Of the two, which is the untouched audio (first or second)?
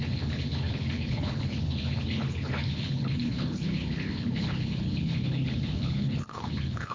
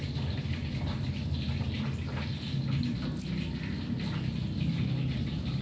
second